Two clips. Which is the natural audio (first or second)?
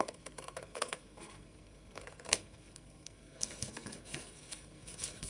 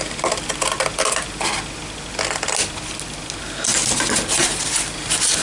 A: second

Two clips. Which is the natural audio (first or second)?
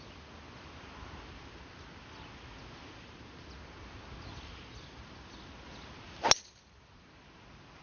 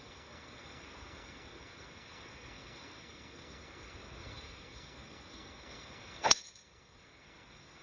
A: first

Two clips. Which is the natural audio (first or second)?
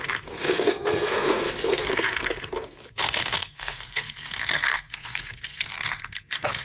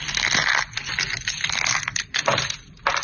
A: second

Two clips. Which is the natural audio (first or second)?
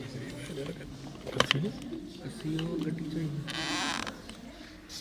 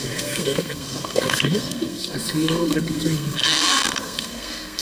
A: first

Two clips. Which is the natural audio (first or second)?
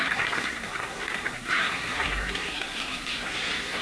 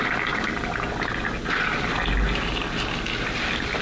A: second